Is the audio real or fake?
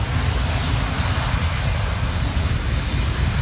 real